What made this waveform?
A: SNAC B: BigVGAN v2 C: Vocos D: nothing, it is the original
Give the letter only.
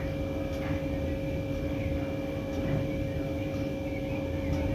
D